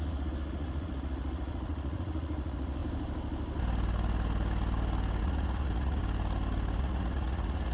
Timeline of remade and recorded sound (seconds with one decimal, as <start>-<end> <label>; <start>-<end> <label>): 0.0-2.8 remade; 2.8-5.2 recorded; 5.2-6.0 remade; 6.0-6.8 recorded; 6.8-7.7 remade